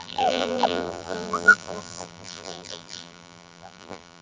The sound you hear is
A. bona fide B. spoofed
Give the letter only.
B